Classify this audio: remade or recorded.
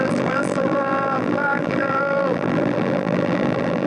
remade